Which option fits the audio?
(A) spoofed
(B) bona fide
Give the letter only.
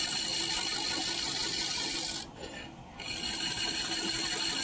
B